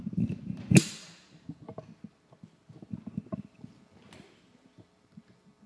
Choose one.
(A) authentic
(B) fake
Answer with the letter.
A